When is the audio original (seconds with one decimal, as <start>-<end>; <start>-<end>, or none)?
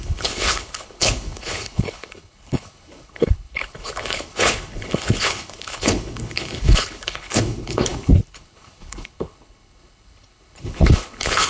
none